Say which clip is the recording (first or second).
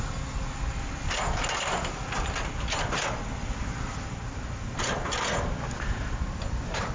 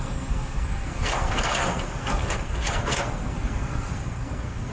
first